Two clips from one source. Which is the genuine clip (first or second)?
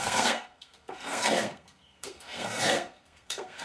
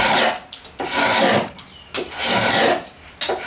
second